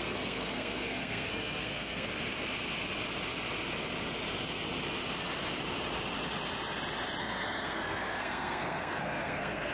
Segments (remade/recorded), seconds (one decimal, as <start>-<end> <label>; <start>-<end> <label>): 0.0-2.1 remade; 2.1-7.2 recorded; 7.2-9.7 remade